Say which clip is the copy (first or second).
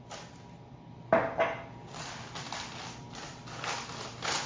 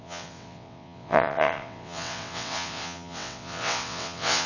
second